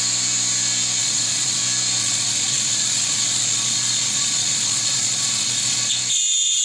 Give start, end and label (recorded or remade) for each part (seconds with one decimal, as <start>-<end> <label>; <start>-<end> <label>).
0.0-1.0 recorded; 1.0-1.6 remade; 1.6-2.0 recorded; 2.0-5.9 remade; 5.9-6.6 recorded